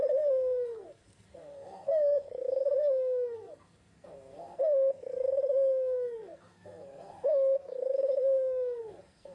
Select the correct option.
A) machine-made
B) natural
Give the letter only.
A